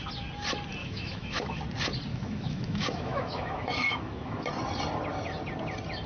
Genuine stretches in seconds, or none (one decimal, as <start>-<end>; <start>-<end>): 0.0-0.8; 1.6-2.1; 4.5-6.1